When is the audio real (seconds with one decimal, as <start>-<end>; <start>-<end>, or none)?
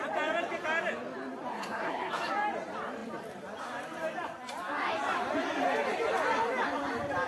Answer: 0.0-1.5; 2.1-7.3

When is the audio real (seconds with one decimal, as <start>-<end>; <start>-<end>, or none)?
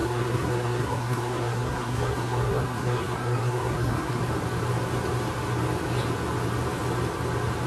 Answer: 4.2-7.7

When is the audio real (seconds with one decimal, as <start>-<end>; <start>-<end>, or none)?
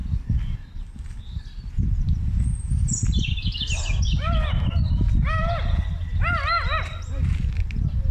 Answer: 0.0-8.1